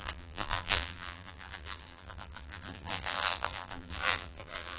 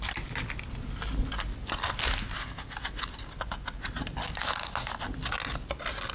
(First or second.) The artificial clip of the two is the first